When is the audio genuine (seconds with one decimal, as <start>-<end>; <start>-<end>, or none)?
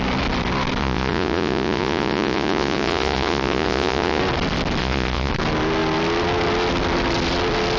0.0-0.8; 4.2-4.8; 5.3-7.8